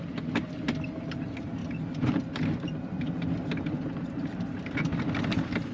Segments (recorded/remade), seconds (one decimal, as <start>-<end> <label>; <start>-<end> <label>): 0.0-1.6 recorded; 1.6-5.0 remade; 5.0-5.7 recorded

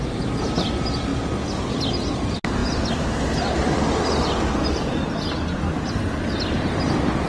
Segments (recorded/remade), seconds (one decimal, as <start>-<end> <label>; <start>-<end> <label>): 0.0-7.3 recorded

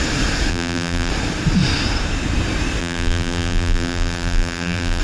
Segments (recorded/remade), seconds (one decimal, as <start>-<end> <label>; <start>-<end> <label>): 0.0-0.5 recorded; 0.5-1.1 remade; 1.1-2.8 recorded; 2.8-5.0 remade